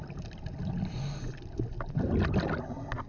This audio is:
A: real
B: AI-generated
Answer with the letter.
A